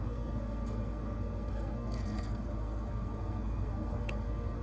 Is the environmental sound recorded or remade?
remade